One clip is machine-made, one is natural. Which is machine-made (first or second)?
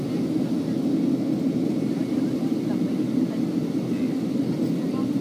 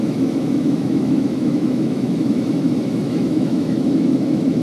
second